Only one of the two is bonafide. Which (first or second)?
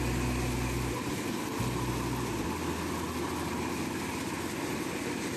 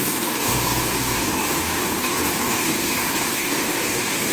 first